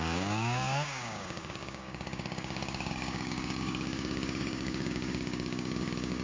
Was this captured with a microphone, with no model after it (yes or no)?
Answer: no